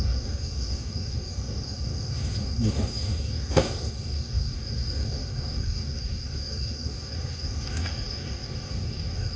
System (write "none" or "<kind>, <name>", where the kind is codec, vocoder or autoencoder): codec, DAC